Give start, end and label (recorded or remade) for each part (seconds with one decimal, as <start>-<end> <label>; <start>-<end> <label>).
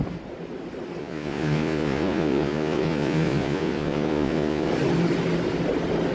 0.0-1.0 recorded; 1.0-4.7 remade; 4.7-6.1 recorded